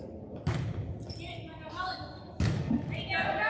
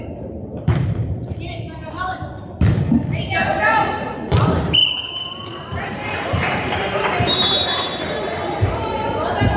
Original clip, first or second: first